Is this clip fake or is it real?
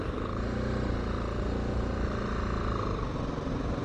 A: real